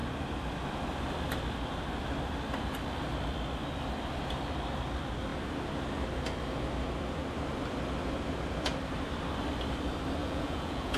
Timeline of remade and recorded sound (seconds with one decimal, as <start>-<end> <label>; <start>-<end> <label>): 0.0-10.2 recorded; 10.2-11.0 remade